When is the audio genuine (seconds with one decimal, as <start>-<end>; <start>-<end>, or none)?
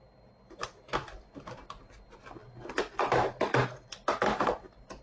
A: none